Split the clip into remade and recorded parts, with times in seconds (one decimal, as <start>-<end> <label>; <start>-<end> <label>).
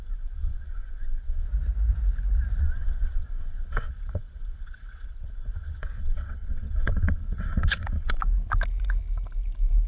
0.0-1.5 remade; 1.5-2.6 recorded; 2.6-8.2 remade; 8.2-9.9 recorded